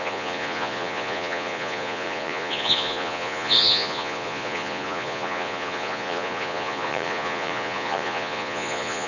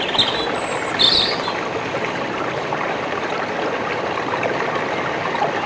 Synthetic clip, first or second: first